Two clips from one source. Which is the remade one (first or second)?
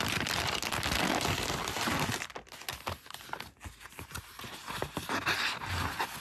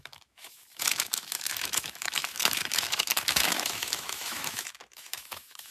second